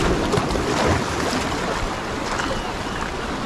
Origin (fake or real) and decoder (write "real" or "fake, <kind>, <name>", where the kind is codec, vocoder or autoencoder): real